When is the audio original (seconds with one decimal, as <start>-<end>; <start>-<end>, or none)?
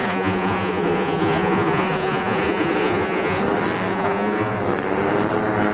3.4-3.9; 4.6-5.7